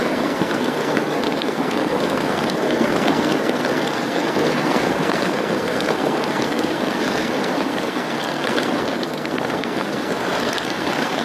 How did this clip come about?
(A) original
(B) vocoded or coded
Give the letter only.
B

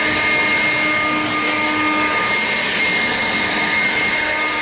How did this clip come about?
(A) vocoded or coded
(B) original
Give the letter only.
B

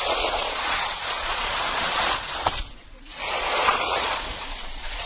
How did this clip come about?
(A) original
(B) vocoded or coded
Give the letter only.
B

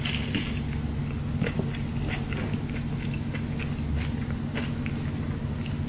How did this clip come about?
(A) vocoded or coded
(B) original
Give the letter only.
B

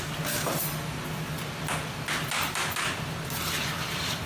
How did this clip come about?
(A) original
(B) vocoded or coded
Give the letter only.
A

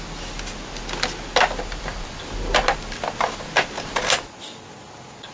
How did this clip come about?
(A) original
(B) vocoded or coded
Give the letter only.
A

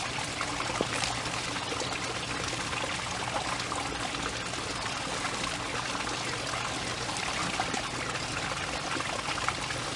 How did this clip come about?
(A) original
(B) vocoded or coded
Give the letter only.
A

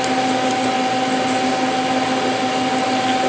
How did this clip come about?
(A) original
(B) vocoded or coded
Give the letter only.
A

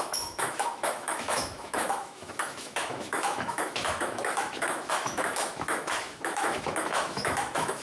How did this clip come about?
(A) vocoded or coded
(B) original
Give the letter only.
A